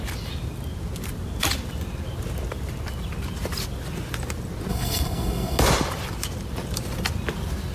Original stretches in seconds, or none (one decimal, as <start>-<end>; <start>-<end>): 0.0-4.7; 5.6-7.7